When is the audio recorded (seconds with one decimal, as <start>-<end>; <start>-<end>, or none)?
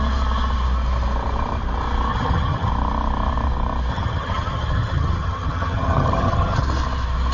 0.0-2.1; 2.7-3.9; 6.6-7.3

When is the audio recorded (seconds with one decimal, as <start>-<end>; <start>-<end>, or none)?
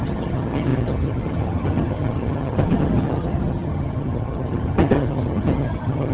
none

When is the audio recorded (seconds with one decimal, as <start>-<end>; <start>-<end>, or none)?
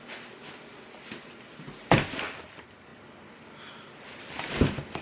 0.0-5.0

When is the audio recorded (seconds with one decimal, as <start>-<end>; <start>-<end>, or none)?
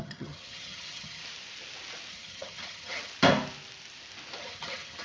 1.2-2.1; 3.1-4.4